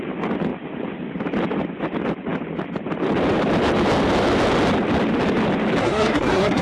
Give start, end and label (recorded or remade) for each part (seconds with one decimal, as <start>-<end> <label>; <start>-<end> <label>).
0.0-5.8 recorded; 5.8-6.6 remade